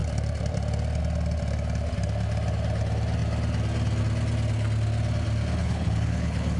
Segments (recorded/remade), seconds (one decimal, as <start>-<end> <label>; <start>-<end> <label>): 0.0-5.6 recorded; 5.6-6.6 remade